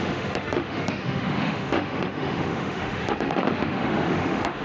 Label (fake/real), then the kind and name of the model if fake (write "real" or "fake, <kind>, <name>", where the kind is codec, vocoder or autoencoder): fake, autoencoder, DAC-VAE